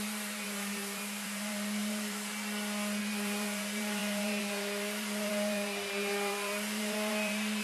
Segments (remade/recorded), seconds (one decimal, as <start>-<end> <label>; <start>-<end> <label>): 0.0-2.3 remade; 2.3-3.0 recorded; 3.0-7.6 remade